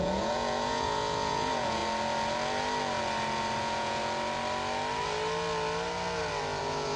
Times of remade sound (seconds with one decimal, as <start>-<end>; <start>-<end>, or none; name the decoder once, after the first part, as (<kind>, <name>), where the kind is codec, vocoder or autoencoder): 0.0-1.8 (vocoder, Vocos); 3.6-4.0; 6.6-7.0